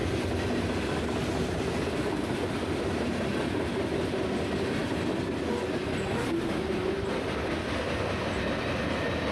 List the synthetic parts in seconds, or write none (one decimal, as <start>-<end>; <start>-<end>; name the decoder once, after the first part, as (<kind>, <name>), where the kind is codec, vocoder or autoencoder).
none